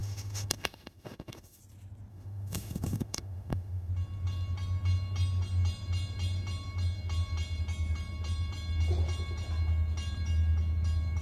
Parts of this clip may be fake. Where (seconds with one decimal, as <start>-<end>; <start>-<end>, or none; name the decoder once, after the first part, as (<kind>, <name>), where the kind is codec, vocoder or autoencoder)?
0.0-1.6 (autoencoder, DAC-VAE); 2.1-3.9